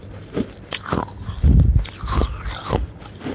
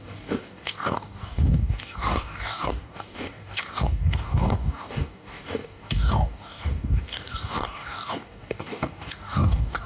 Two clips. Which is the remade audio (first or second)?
second